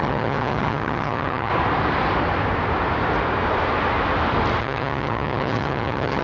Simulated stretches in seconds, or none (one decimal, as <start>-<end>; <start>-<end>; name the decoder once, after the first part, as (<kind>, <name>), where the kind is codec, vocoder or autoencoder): 0.0-1.5 (vocoder, HiFi-GAN); 4.6-6.2